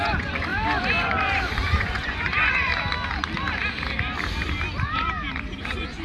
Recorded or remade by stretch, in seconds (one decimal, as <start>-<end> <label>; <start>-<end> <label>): 0.0-0.5 remade; 0.5-1.0 recorded; 1.0-2.7 remade; 2.7-5.6 recorded; 5.6-6.0 remade